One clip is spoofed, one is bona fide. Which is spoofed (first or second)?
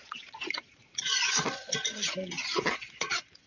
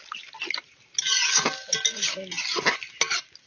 first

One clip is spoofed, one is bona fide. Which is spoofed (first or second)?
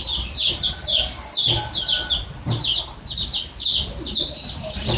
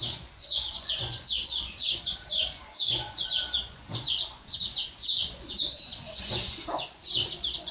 second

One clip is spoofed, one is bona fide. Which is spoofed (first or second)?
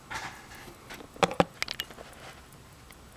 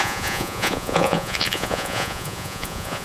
second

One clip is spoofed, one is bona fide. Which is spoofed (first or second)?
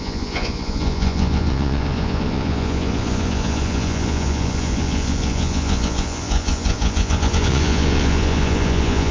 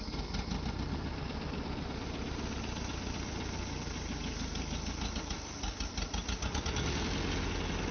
first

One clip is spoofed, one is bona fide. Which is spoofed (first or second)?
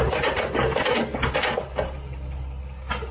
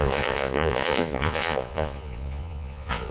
second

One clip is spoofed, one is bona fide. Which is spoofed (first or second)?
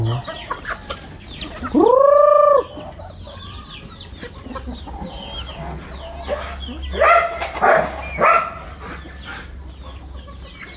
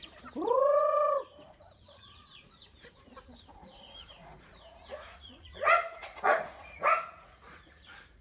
second